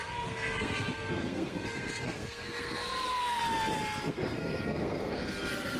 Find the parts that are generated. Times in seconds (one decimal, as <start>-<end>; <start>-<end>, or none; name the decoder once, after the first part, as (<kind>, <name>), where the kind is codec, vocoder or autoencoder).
0.0-3.4 (codec, SNAC); 4.0-5.8